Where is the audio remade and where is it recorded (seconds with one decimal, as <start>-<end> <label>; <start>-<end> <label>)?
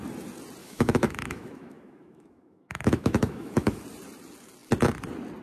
0.0-0.6 recorded; 0.6-3.8 remade; 3.8-5.4 recorded